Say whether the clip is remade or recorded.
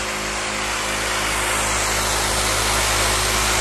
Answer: recorded